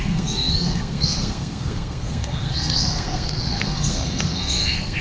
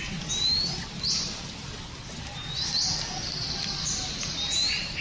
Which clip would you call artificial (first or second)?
first